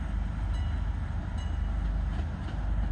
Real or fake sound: real